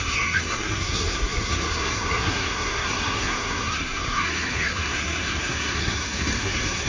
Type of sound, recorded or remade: remade